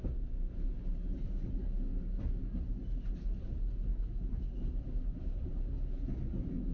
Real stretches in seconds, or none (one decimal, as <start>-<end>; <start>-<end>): 0.0-6.7